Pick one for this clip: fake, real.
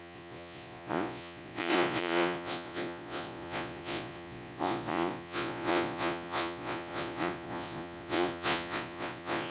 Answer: fake